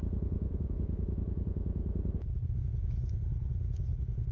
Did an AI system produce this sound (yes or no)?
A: yes